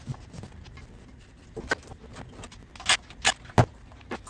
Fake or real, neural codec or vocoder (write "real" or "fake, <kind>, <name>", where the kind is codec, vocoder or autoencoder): real